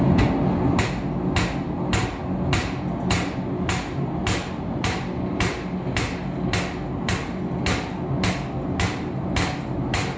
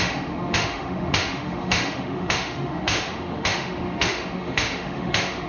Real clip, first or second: first